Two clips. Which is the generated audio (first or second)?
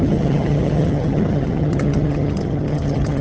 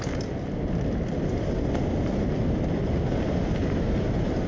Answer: first